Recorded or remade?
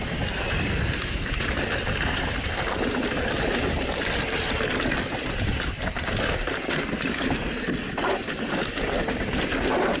recorded